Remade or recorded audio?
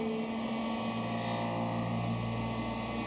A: recorded